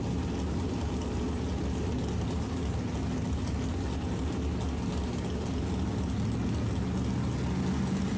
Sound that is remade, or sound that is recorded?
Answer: recorded